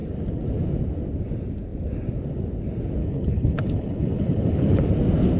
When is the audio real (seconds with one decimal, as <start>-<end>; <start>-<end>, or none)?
0.0-3.0; 4.9-5.4